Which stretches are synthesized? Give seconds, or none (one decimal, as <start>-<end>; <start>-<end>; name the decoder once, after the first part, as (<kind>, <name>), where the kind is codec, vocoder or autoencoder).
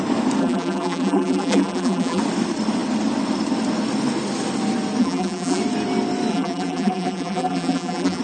0.4-2.2 (vocoder, BigVGAN v2); 5.0-5.6; 6.3-8.2